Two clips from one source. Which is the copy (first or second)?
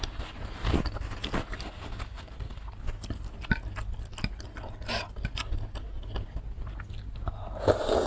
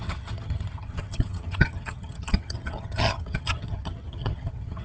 second